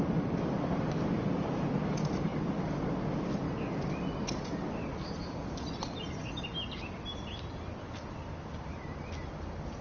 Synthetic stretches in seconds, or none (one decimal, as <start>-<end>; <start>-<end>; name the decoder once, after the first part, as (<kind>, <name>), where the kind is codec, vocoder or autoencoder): none